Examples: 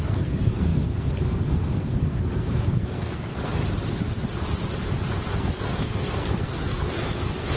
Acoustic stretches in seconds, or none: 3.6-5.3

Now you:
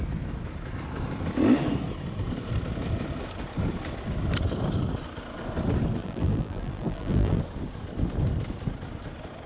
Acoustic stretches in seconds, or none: 0.0-6.0; 7.4-9.5